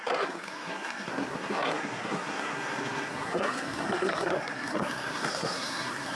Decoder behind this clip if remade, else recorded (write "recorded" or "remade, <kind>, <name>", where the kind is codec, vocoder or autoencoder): remade, codec, SNAC